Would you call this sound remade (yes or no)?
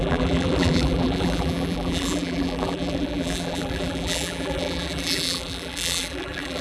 yes